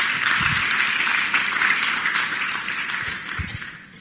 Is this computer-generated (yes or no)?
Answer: no